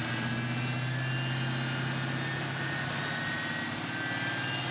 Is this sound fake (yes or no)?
no